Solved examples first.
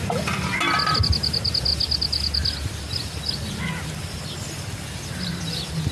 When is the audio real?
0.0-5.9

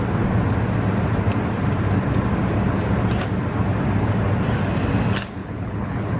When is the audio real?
0.0-5.4

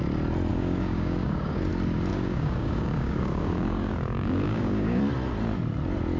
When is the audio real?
0.0-0.5; 1.7-2.1; 5.0-6.2

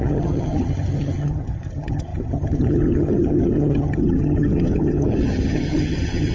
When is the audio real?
none

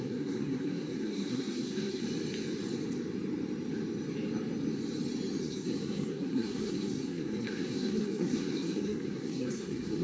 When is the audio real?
2.0-5.4

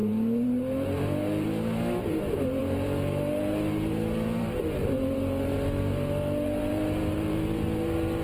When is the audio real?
none